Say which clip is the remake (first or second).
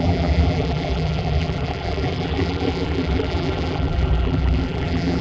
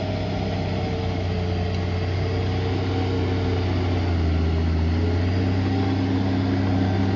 first